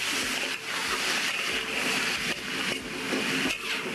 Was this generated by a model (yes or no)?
no